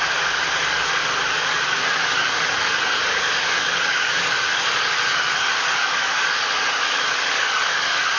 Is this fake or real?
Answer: fake